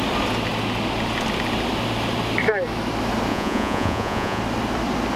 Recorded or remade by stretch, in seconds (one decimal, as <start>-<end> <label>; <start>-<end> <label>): 0.0-3.3 recorded; 3.3-4.4 remade; 4.4-5.2 recorded